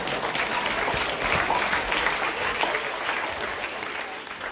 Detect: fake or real real